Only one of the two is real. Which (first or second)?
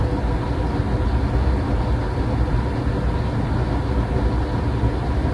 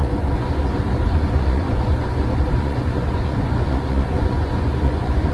first